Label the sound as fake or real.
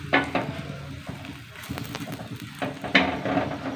real